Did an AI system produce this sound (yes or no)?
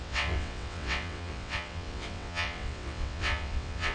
yes